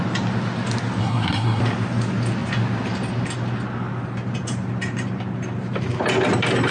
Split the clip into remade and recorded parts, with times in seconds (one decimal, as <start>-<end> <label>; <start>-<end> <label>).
0.0-1.0 recorded; 1.0-1.6 remade; 1.6-6.7 recorded